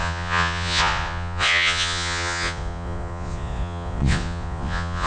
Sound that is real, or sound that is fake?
fake